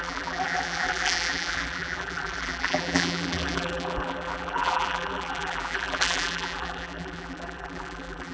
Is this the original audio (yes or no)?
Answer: no